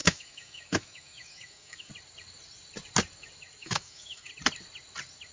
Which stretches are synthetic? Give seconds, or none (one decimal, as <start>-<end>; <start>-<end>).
0.0-1.9; 3.6-4.3